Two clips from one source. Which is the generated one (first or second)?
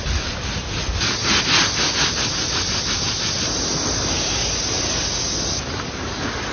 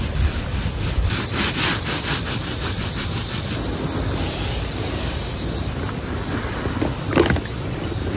second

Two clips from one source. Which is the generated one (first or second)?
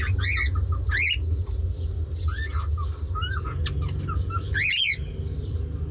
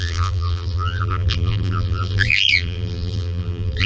second